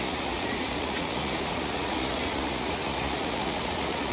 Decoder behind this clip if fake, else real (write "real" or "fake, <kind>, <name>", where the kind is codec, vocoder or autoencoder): fake, vocoder, Vocos